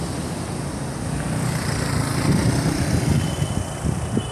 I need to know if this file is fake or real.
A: fake